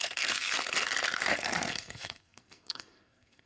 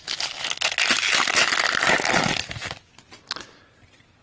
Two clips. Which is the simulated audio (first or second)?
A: first